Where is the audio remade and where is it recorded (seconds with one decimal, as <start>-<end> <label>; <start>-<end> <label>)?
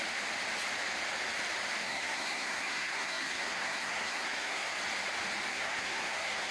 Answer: 0.0-1.8 recorded; 1.8-4.8 remade; 4.8-5.5 recorded; 5.5-6.5 remade